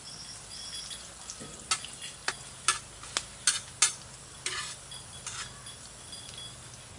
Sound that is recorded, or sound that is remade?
recorded